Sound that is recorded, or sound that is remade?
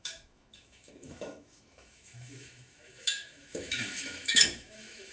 remade